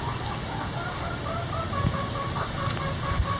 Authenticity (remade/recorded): recorded